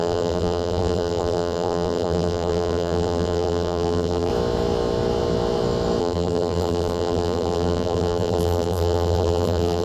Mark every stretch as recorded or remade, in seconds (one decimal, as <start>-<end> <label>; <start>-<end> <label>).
0.0-4.3 remade; 4.3-6.0 recorded; 6.0-9.8 remade